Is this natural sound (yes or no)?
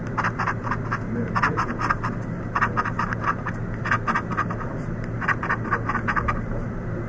yes